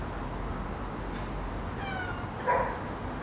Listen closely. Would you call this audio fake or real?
real